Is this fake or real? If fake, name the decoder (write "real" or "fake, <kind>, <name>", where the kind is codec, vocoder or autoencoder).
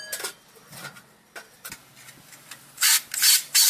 real